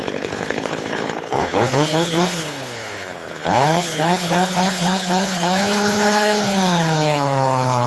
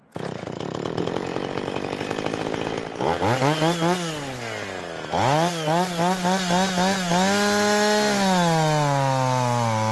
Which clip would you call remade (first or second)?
first